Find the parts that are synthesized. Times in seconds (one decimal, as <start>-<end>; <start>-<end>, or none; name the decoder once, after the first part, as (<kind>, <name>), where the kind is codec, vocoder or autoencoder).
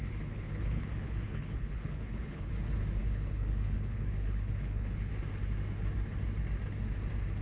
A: 0.0-2.5 (codec, HILCodec); 3.0-5.1